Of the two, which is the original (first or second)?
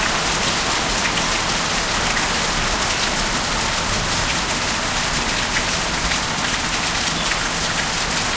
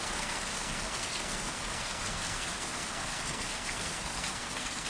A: first